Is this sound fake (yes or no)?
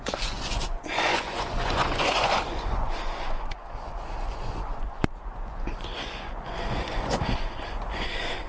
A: yes